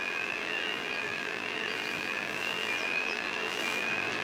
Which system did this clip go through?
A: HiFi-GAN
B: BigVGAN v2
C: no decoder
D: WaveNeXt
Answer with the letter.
B